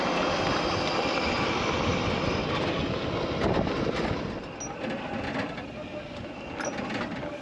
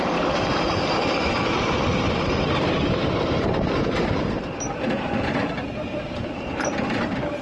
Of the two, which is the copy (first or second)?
second